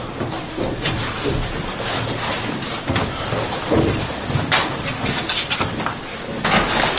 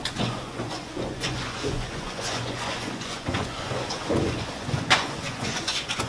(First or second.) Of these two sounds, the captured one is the first